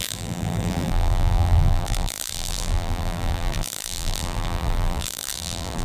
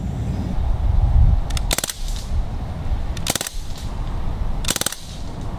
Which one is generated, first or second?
first